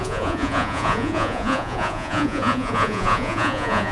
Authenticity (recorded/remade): remade